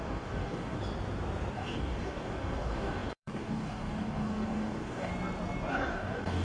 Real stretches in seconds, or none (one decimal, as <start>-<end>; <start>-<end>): 0.8-1.5; 5.1-5.7